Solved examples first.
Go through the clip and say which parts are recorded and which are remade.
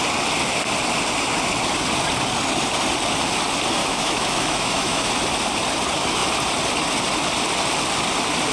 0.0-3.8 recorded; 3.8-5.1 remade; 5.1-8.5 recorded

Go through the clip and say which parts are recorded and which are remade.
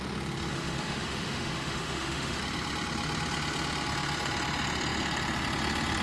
0.0-0.5 recorded; 0.5-2.4 remade; 2.4-6.0 recorded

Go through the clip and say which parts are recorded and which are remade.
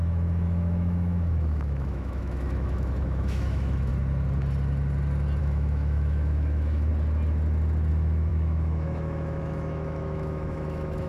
0.0-3.9 remade; 3.9-5.4 recorded; 5.4-6.9 remade; 6.9-7.9 recorded; 7.9-11.1 remade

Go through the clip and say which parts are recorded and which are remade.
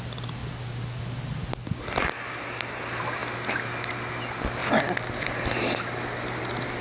0.0-6.8 recorded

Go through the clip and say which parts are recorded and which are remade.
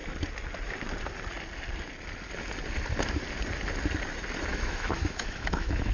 0.0-4.5 recorded; 4.5-5.9 remade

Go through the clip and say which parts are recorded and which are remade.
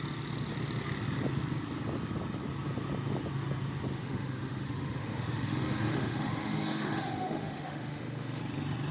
0.0-4.0 recorded; 4.0-8.4 remade; 8.4-8.9 recorded